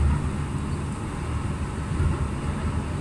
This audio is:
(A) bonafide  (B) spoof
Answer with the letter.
A